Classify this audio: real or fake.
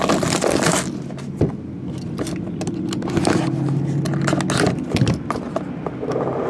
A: real